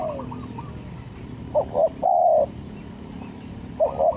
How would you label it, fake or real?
real